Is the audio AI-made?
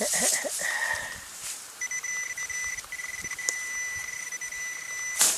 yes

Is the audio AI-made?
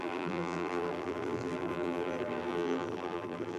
yes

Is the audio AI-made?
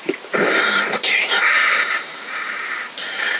yes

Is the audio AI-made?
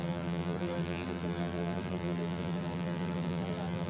yes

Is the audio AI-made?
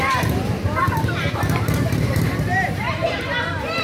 yes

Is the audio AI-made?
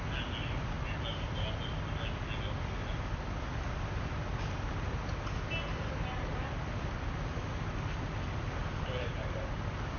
no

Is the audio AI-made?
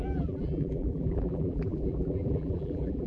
yes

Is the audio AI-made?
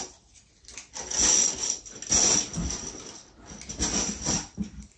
no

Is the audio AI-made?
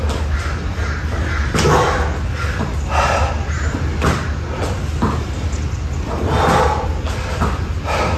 no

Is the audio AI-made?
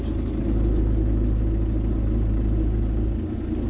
no